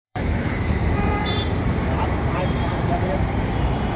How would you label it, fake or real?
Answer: fake